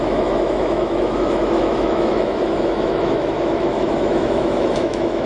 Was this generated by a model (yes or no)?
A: yes